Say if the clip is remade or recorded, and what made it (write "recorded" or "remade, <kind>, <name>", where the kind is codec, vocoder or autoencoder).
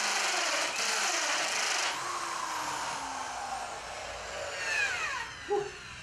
recorded